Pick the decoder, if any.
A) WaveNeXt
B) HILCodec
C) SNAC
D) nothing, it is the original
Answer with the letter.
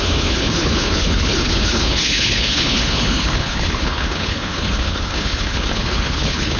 B